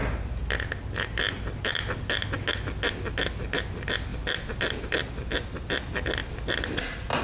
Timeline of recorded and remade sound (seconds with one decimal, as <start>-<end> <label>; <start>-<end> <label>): 0.0-7.2 recorded

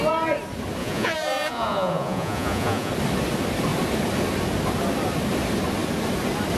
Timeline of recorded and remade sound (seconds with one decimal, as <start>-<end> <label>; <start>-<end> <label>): 0.0-0.8 recorded; 0.8-2.9 remade; 2.9-6.6 recorded